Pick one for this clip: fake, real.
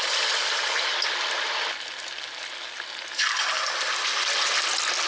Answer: real